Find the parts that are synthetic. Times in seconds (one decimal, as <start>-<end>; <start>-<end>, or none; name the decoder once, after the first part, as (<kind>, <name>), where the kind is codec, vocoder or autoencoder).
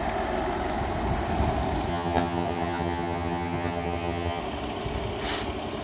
1.9-4.4 (vocoder, HiFi-GAN)